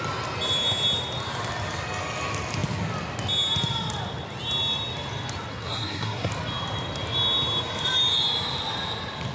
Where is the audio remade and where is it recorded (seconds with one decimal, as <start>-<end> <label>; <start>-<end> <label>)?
0.0-5.5 recorded; 5.5-6.3 remade; 6.3-9.3 recorded